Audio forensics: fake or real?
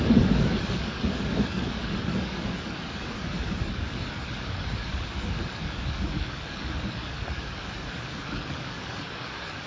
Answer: fake